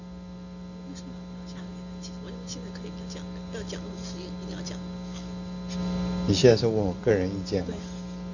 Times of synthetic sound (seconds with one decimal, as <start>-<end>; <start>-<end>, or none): 6.4-7.1